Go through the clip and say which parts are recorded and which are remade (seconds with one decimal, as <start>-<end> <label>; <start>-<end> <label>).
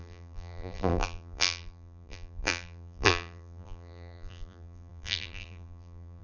0.0-6.2 remade